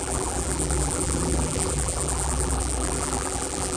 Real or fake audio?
fake